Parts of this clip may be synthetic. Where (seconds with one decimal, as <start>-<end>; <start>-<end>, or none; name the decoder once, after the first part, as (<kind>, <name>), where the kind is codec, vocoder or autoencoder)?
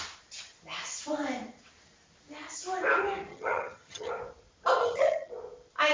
3.3-4.1 (vocoder, HiFi-GAN); 4.8-5.3